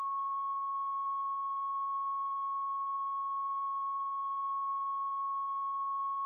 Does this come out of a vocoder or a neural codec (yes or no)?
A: yes